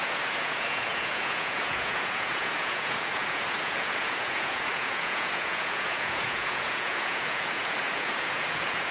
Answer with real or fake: fake